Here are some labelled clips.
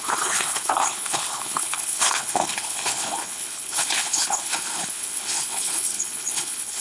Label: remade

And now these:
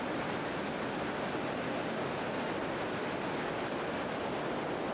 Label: recorded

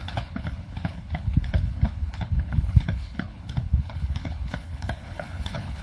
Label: remade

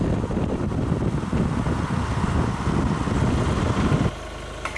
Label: recorded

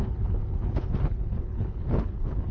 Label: remade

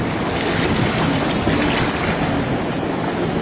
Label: recorded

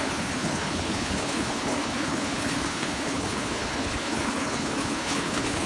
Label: remade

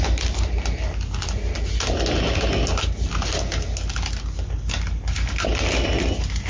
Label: recorded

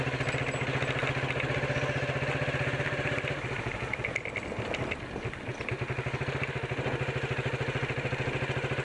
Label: recorded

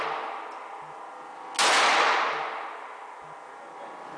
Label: recorded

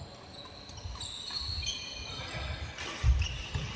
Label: recorded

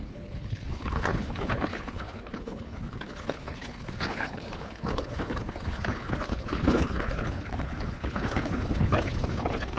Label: remade